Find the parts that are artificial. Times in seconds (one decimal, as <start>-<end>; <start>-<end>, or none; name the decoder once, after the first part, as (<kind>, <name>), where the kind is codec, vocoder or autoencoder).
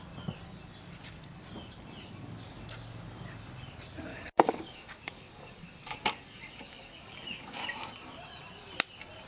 4.1-7.6 (codec, DAC)